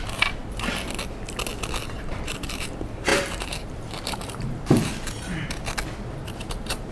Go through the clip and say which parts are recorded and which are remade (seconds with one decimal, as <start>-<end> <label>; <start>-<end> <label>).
0.0-0.4 remade; 0.4-1.8 recorded; 1.8-4.9 remade; 4.9-6.0 recorded; 6.0-6.9 remade